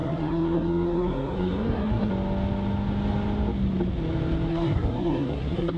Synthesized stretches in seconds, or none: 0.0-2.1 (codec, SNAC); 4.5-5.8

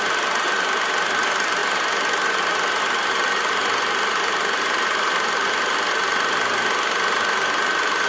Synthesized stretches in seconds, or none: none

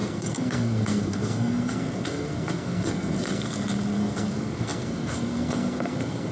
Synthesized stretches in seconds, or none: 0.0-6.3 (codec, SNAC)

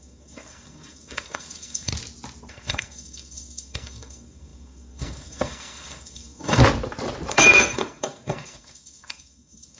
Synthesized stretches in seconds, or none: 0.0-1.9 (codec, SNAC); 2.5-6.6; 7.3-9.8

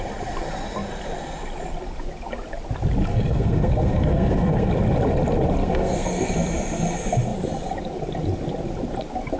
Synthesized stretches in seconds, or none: 3.1-4.7 (codec, SNAC); 5.6-6.3

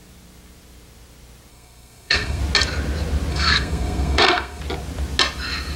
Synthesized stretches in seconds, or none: 1.5-2.4 (codec, SNAC); 3.3-4.6